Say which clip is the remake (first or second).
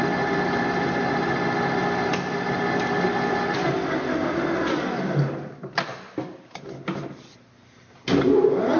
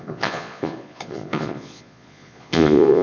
second